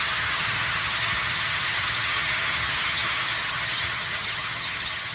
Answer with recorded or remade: remade